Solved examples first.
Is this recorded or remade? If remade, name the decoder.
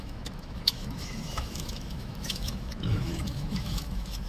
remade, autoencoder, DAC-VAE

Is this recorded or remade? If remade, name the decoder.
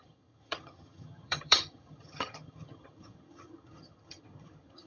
remade, vocoder, HiFi-GAN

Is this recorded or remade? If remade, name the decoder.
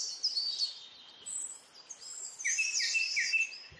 recorded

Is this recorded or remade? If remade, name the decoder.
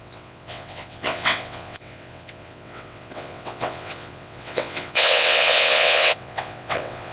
remade, vocoder, WaveNeXt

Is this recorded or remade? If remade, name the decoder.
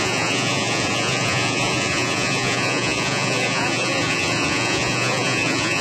remade, vocoder, Vocos